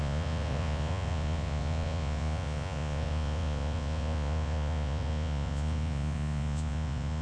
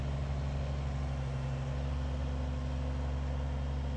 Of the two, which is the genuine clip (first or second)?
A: second